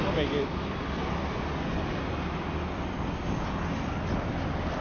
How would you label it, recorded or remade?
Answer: recorded